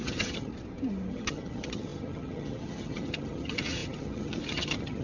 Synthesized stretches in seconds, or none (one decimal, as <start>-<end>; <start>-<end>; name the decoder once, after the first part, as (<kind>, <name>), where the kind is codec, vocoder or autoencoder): 0.0-0.5 (vocoder, HiFi-GAN); 1.1-5.0